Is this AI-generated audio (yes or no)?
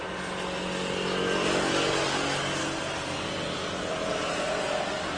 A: no